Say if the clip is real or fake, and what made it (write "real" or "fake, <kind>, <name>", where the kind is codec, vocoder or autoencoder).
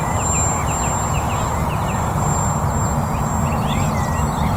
real